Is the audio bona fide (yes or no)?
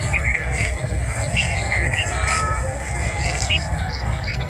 no